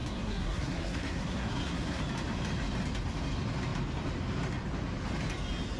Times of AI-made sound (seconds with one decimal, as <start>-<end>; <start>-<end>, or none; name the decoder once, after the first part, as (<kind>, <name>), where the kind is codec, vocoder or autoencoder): 0.0-2.0 (codec, SNAC)